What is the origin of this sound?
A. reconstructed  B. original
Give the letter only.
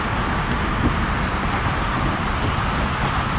B